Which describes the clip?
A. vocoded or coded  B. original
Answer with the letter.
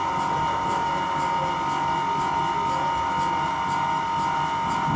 B